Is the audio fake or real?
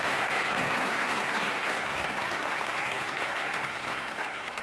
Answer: fake